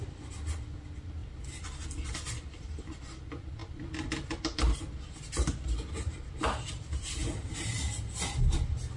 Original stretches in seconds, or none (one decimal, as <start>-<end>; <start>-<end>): 0.0-9.0